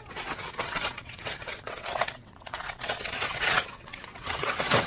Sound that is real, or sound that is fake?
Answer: fake